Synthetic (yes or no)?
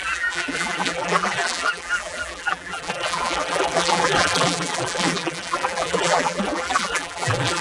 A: yes